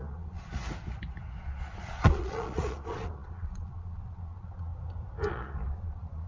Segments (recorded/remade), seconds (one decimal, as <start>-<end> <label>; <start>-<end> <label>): 0.0-0.6 remade; 0.6-1.4 recorded; 1.4-4.7 remade; 4.7-5.3 recorded; 5.3-6.3 remade